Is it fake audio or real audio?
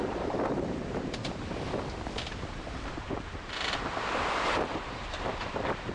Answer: fake